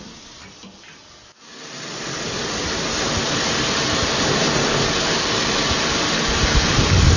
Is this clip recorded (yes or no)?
yes